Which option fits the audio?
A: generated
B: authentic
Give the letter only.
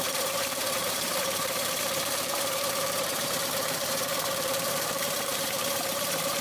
A